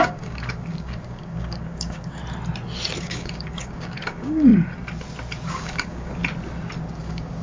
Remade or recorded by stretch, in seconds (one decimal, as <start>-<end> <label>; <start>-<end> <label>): 0.0-2.2 remade; 2.2-3.0 recorded; 3.0-4.5 remade; 4.5-5.5 recorded; 5.5-6.2 remade; 6.2-7.0 recorded; 7.0-7.4 remade